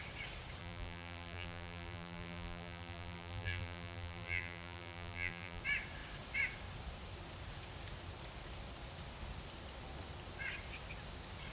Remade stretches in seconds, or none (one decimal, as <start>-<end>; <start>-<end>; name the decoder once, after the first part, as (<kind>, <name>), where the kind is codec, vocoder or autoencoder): 0.6-5.6 (vocoder, BigVGAN v2)